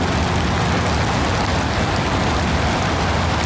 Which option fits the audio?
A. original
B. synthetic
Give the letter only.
A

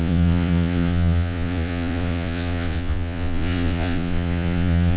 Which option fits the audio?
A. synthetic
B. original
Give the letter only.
A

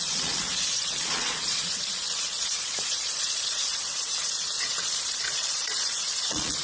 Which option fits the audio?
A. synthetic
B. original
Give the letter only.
A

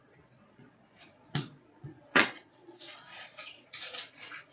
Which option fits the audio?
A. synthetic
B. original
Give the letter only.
A